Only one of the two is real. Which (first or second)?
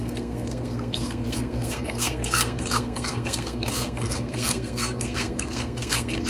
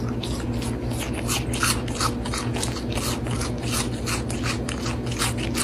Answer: second